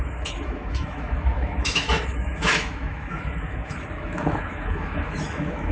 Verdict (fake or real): fake